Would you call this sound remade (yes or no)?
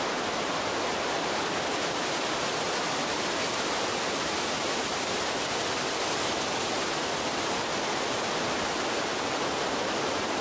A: no